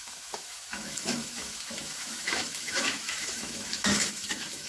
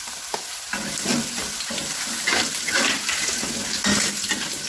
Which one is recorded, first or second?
second